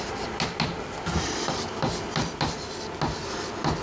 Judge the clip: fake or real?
real